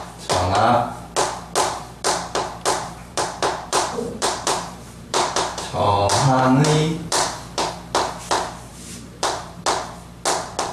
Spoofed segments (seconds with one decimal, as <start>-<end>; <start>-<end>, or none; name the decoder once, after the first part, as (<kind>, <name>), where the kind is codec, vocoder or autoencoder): 3.0-7.7 (vocoder, BigVGAN v2); 8.7-9.6